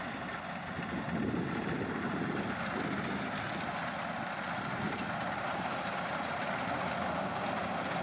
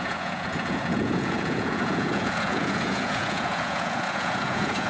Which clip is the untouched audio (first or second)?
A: first